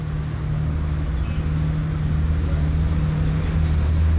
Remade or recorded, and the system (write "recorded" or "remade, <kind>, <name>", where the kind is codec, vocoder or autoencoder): recorded